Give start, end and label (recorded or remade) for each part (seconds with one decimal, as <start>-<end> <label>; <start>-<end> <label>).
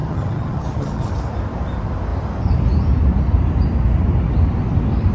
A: 0.0-1.1 remade; 1.1-5.1 recorded